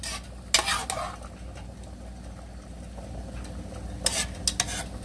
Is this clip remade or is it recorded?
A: recorded